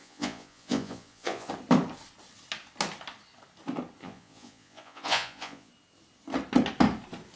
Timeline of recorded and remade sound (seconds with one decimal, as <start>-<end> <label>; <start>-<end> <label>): 0.0-1.5 remade; 1.5-4.0 recorded; 4.0-5.7 remade; 5.7-7.4 recorded